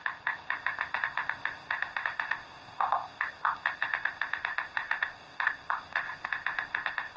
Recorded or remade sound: remade